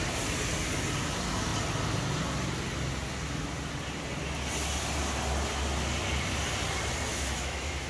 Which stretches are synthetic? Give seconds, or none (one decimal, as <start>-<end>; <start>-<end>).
7.1-7.9